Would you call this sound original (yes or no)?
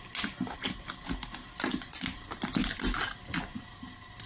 yes